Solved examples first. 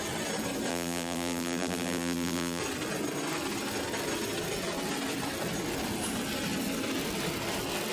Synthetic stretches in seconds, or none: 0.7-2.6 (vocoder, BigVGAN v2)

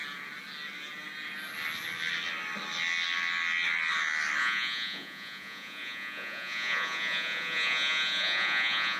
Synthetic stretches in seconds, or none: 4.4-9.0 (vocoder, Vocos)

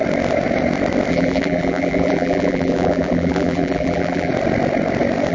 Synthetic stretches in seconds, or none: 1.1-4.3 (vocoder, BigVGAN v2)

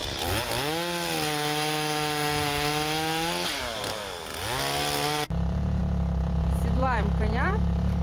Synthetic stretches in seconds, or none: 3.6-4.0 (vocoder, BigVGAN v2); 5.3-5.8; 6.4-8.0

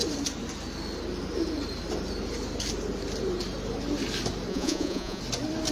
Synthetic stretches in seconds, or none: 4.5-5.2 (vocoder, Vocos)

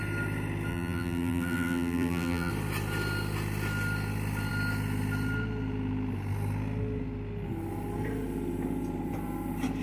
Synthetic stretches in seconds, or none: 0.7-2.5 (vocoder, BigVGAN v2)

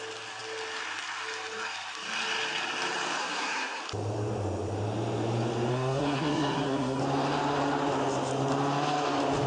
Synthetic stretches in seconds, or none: 3.2-3.8 (codec, SNAC); 5.7-7.0